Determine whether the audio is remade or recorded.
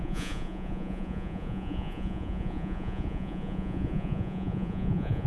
remade